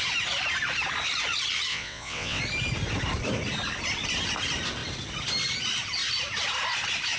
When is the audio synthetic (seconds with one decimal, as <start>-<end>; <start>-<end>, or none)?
1.7-2.4